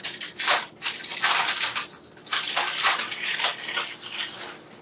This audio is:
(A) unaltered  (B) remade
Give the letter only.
A